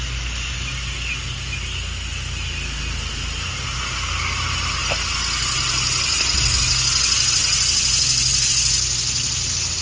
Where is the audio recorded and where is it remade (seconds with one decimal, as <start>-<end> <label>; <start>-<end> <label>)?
0.0-9.8 recorded

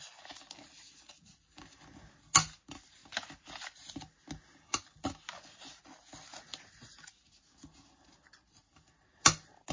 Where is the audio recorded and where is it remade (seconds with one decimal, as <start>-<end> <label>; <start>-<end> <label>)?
0.0-9.7 recorded

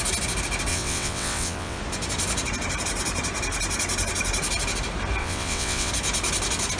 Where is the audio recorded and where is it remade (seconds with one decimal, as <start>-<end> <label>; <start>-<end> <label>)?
0.0-0.7 recorded; 0.7-1.8 remade; 1.8-5.2 recorded; 5.2-5.9 remade; 5.9-6.8 recorded

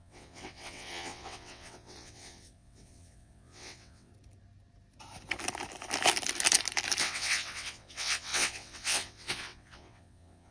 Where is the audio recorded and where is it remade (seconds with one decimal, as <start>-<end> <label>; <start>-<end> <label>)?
0.0-4.1 remade; 4.1-7.0 recorded; 7.0-10.5 remade